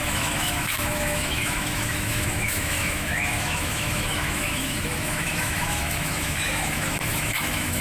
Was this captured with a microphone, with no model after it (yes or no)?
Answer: no